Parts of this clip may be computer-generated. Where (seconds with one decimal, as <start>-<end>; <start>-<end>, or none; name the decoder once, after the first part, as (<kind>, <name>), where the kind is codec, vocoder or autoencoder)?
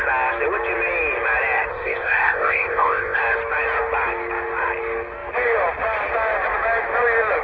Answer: 1.7-3.2 (codec, ZipCodec)